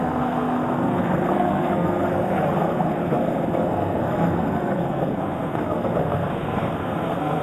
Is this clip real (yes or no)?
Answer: no